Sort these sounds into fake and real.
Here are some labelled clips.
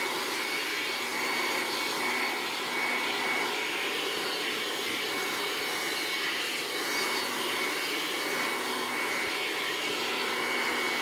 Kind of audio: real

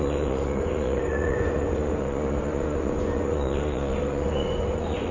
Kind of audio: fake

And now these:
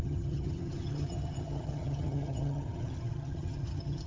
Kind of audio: fake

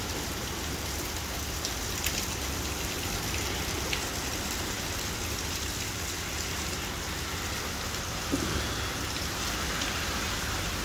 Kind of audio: real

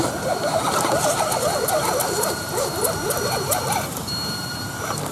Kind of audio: fake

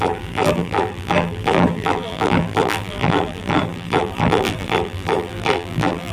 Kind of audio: fake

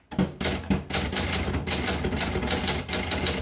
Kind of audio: real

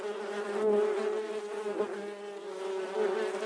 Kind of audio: real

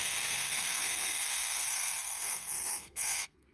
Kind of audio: fake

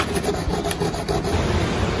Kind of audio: real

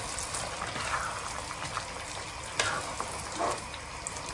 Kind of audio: real